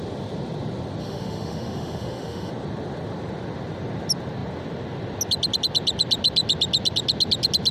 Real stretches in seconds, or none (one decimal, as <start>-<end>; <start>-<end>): 0.0-1.0; 2.5-7.7